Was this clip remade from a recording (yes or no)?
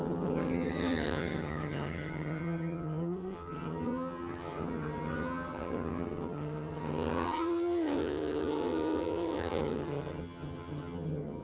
yes